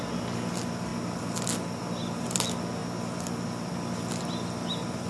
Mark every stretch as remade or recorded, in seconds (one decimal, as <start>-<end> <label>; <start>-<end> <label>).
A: 0.0-5.1 recorded